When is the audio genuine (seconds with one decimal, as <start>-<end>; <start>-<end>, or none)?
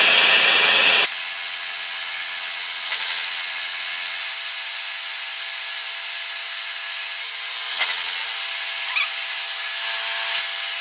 4.2-7.7; 8.2-10.8